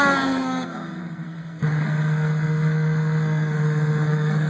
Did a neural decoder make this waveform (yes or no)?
yes